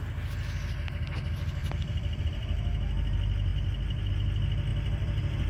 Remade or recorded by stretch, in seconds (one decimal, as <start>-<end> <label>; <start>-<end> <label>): 0.0-1.6 recorded; 1.6-2.2 remade; 2.2-3.5 recorded; 3.5-4.1 remade; 4.1-4.7 recorded; 4.7-5.5 remade